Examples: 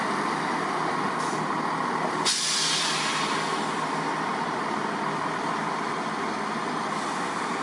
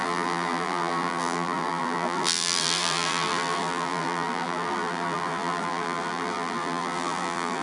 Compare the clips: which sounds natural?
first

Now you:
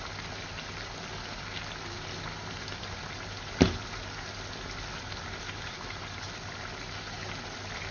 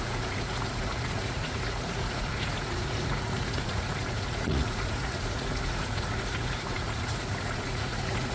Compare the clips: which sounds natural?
first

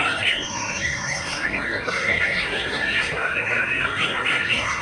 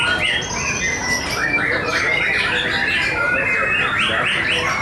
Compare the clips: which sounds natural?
second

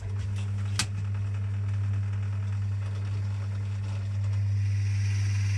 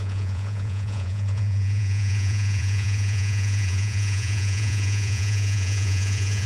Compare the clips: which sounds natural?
first